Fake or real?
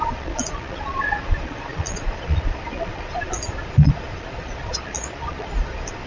fake